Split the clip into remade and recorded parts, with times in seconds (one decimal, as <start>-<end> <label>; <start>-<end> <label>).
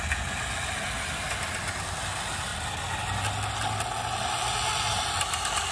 0.0-5.7 recorded